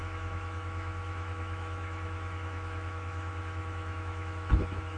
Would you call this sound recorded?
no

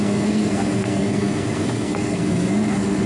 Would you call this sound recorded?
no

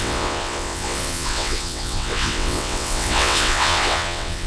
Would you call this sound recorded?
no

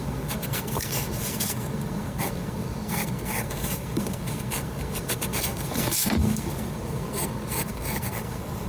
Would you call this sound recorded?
no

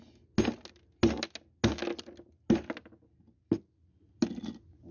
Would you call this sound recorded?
yes